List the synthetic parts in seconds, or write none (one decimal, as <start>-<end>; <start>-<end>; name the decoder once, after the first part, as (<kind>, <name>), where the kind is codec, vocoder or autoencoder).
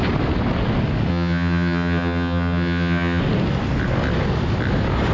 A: 1.1-3.2 (vocoder, HiFi-GAN)